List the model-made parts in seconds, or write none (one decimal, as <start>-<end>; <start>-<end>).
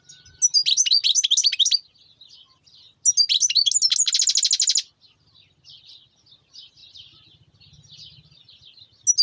1.4-2.0